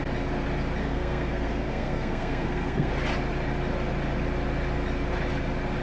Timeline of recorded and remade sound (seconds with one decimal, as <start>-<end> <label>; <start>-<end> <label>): 0.0-0.8 recorded; 0.8-2.9 remade; 2.9-5.8 recorded

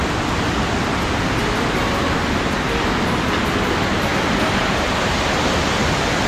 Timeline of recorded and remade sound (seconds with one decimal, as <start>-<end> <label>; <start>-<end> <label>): 0.0-4.1 recorded; 4.1-5.2 remade; 5.2-6.3 recorded

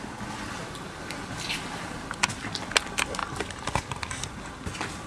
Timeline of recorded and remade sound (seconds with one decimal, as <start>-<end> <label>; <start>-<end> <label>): 0.0-3.2 recorded; 3.2-4.3 remade; 4.3-5.1 recorded

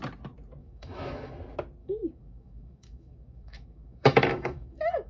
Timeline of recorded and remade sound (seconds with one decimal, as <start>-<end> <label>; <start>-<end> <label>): 0.0-0.6 recorded; 0.6-1.3 remade; 1.3-1.8 recorded; 1.8-5.1 remade

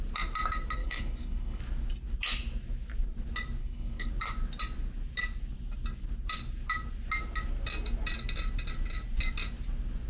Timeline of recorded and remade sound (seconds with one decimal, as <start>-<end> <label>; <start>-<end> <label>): 0.0-0.8 recorded; 0.8-1.6 remade; 1.6-3.6 recorded; 3.6-4.1 remade; 4.1-10.1 recorded

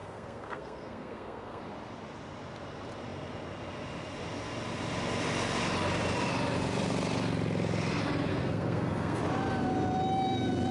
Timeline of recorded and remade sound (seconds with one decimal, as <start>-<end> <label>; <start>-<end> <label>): 0.0-1.6 remade; 1.6-8.3 recorded; 8.3-9.2 remade; 9.2-10.7 recorded